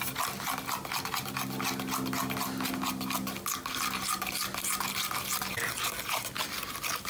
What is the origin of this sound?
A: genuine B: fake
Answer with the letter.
A